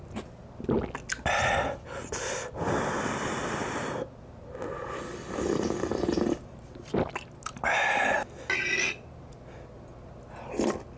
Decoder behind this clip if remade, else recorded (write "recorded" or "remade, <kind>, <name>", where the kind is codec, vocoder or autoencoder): recorded